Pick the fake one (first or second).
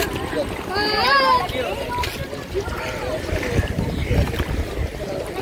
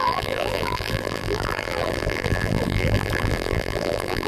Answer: second